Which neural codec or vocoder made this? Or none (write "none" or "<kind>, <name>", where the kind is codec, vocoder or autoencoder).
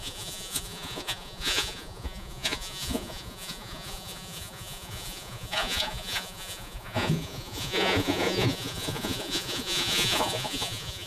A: vocoder, Vocos